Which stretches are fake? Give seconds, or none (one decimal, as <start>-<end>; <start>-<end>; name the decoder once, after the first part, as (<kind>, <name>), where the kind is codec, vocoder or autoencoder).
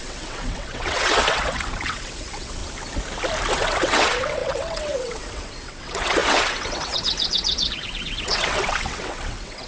0.0-2.6 (vocoder, WaveNeXt); 3.5-9.7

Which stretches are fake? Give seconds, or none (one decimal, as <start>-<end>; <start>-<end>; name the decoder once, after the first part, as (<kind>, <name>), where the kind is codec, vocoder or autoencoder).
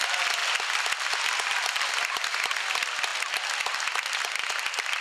none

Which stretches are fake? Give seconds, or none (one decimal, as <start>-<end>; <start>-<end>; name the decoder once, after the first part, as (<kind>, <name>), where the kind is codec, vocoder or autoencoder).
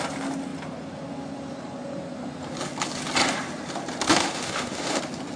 4.1-5.0 (autoencoder, DAC-VAE)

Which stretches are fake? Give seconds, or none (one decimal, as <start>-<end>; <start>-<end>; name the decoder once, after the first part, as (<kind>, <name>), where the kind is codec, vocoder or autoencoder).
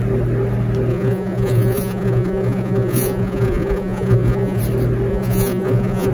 0.9-4.6 (vocoder, Vocos); 5.1-6.1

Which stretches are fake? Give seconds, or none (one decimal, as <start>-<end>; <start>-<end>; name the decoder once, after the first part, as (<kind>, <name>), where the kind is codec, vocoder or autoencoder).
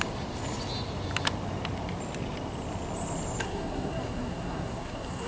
3.4-5.3 (codec, SNAC)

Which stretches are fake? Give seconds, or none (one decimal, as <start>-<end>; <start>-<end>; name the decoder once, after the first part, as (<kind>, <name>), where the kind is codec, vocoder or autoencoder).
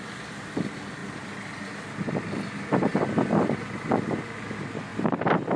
1.0-1.6 (vocoder, BigVGAN v2); 2.9-3.8